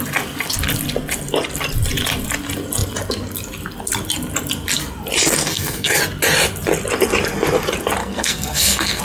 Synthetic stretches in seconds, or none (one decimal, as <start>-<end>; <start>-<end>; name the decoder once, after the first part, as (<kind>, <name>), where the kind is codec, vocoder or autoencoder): 5.4-6.0 (codec, SNAC); 8.0-9.0